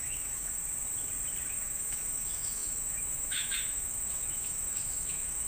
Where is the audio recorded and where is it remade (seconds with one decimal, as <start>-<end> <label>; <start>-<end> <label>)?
0.0-0.6 remade; 0.6-1.5 recorded; 1.5-5.5 remade